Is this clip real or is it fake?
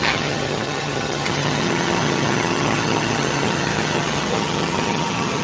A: fake